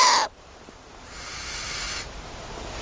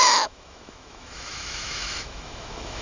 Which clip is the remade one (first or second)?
second